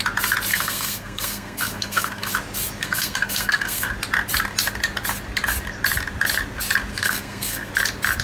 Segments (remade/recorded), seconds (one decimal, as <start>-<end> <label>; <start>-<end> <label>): 0.0-0.5 recorded; 0.5-2.3 remade; 2.3-2.8 recorded; 2.8-3.9 remade; 3.9-6.9 recorded; 6.9-7.7 remade; 7.7-8.2 recorded